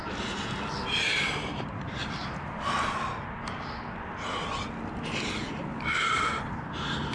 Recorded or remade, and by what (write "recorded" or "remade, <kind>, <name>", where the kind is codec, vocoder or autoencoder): recorded